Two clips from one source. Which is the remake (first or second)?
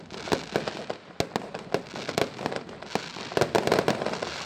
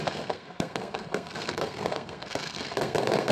second